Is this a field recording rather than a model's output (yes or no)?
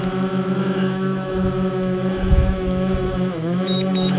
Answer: no